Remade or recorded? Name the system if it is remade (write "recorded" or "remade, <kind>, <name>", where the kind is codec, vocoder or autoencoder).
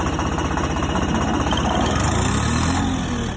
recorded